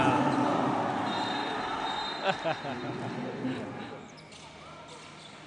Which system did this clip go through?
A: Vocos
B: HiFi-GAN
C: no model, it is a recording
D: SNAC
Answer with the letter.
C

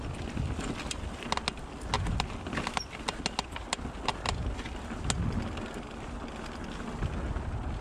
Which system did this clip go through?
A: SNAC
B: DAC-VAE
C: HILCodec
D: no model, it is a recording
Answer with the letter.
D